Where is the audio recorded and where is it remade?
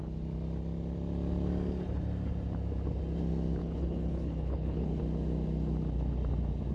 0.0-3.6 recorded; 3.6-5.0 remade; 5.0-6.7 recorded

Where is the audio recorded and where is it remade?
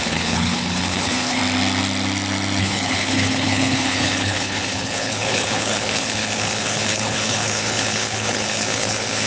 0.0-1.4 remade; 1.4-2.6 recorded; 2.6-9.3 remade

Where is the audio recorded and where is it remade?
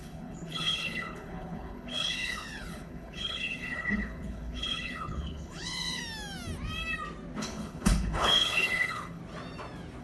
0.0-6.0 remade; 6.0-7.4 recorded; 7.4-9.2 remade; 9.2-10.0 recorded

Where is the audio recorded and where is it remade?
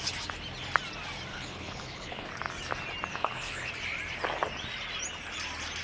0.0-1.3 recorded; 1.3-2.3 remade; 2.3-3.1 recorded; 3.1-3.7 remade; 3.7-5.8 recorded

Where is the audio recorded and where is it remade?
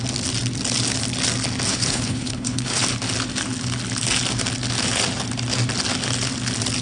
0.0-1.7 recorded; 1.7-2.8 remade; 2.8-6.8 recorded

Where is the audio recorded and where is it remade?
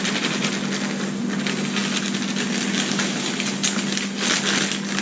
0.0-5.0 recorded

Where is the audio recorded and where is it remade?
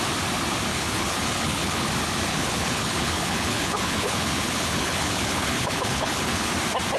0.0-0.7 recorded; 0.7-1.9 remade; 1.9-2.3 recorded; 2.3-6.5 remade; 6.5-7.0 recorded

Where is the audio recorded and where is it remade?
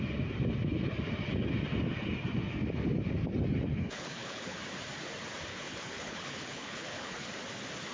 0.0-3.7 recorded; 3.7-4.6 remade; 4.6-5.5 recorded; 5.5-7.3 remade; 7.3-7.9 recorded